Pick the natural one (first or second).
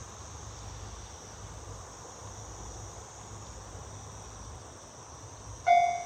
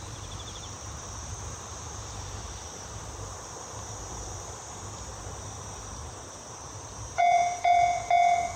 first